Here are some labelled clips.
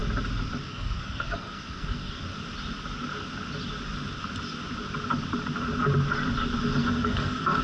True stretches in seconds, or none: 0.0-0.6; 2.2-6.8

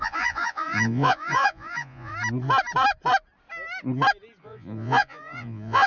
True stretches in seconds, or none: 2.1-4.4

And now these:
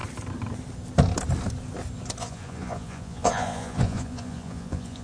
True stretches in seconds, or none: 0.0-2.2